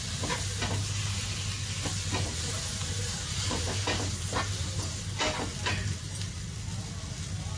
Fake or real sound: real